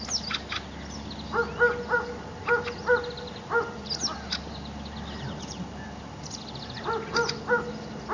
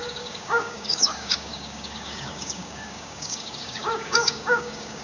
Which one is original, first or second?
first